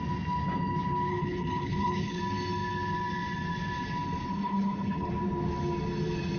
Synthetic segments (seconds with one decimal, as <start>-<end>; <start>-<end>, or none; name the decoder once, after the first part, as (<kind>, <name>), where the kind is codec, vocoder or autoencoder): 1.1-2.2 (codec, HILCodec); 4.3-5.1